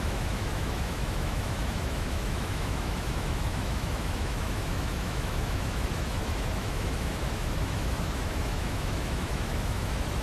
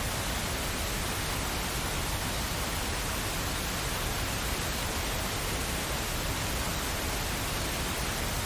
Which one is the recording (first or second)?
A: second